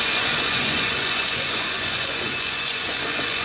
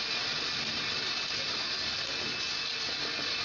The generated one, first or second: first